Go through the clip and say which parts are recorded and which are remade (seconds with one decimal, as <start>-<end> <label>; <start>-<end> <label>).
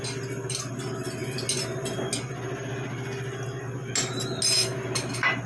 0.0-5.5 recorded